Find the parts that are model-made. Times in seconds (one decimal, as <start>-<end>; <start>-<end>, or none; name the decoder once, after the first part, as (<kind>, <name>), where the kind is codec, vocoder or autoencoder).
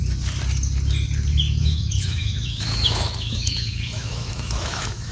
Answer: 1.6-5.1 (autoencoder, DAC-VAE)